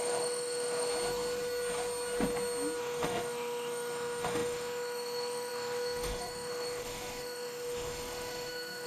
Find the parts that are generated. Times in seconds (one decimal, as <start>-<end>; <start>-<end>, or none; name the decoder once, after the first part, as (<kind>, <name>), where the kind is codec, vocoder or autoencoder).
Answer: 0.0-0.9 (autoencoder, DAC-VAE); 2.8-8.9